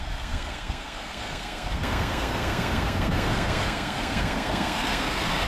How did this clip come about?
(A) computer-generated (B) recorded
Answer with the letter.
A